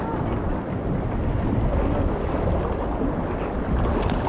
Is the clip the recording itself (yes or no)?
yes